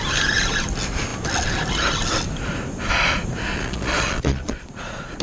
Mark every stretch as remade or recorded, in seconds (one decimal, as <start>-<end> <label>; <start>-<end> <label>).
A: 0.0-3.5 recorded; 3.5-5.2 remade